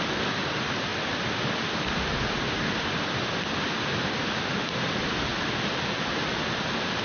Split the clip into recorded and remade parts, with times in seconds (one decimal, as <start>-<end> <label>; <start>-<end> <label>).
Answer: 0.0-7.0 recorded